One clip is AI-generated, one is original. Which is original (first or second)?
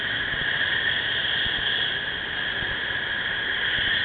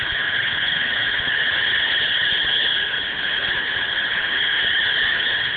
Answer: first